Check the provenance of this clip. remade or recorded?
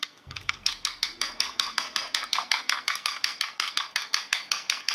remade